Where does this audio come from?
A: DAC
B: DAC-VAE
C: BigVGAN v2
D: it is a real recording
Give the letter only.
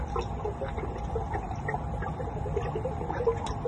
C